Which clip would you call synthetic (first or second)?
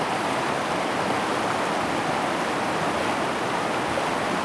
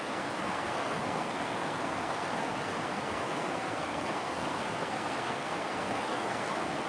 second